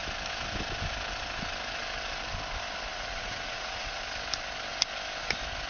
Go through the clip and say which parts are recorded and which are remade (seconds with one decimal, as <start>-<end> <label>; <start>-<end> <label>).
0.0-2.9 recorded; 2.9-4.0 remade; 4.0-5.7 recorded